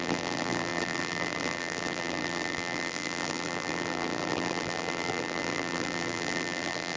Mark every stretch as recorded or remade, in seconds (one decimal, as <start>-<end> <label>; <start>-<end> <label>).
0.0-7.0 remade